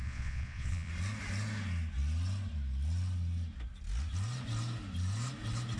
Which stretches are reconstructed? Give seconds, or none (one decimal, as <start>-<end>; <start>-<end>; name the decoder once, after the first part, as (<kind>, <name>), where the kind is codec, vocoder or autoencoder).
0.0-0.9 (vocoder, Vocos)